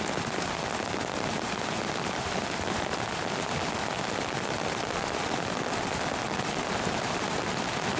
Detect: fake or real real